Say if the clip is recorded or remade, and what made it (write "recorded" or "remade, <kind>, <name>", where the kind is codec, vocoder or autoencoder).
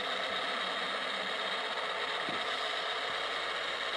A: recorded